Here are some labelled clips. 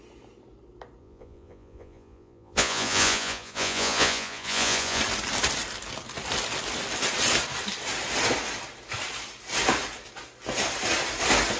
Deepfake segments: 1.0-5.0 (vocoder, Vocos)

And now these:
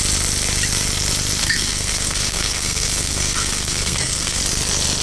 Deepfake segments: 1.4-4.4 (codec, SNAC)

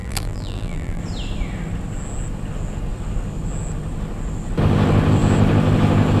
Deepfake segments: 0.0-1.0 (vocoder, BigVGAN v2)

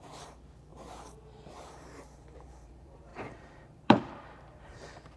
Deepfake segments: 0.0-0.7 (vocoder, BigVGAN v2); 1.5-5.2

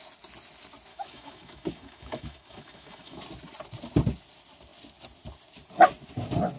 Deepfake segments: 0.9-3.2 (autoencoder, DAC-VAE)

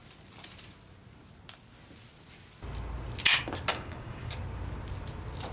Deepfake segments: 3.7-4.3 (codec, DAC)

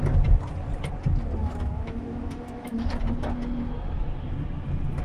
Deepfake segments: 1.4-2.9 (autoencoder, DAC-VAE)